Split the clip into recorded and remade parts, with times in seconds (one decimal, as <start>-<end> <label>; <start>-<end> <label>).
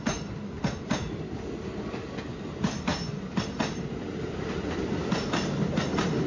0.0-6.3 recorded